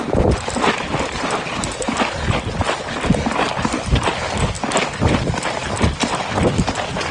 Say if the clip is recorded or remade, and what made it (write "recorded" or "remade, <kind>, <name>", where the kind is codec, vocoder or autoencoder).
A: recorded